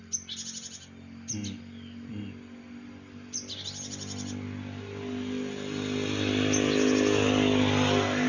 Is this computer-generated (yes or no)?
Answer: no